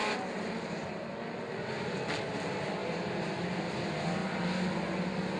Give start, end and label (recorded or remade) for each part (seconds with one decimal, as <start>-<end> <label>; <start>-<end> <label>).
0.0-1.1 remade; 1.1-2.8 recorded; 2.8-3.7 remade; 3.7-5.4 recorded